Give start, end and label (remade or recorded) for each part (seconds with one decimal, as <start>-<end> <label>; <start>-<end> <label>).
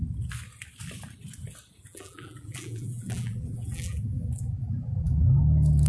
0.0-1.9 recorded; 1.9-5.4 remade; 5.4-5.9 recorded